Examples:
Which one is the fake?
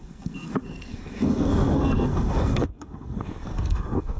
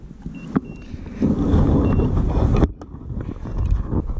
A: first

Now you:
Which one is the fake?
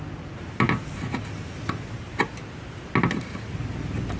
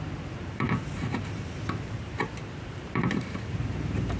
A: second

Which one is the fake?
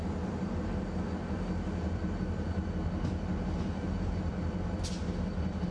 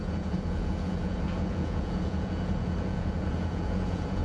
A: second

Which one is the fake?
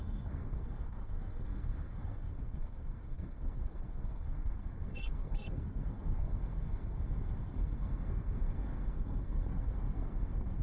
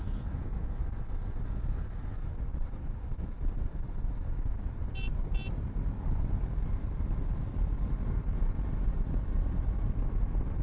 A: first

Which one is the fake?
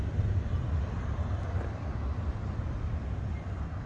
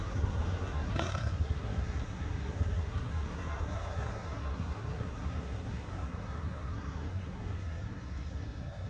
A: second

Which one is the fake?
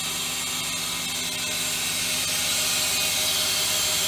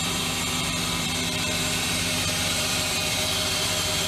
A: second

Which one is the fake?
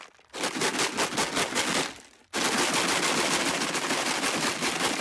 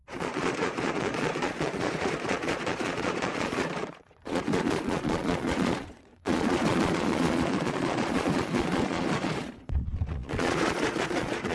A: second